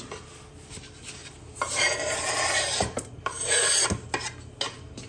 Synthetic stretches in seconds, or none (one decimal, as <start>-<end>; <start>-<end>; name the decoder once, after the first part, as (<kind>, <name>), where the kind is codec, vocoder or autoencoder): 1.2-3.7 (vocoder, BigVGAN v2)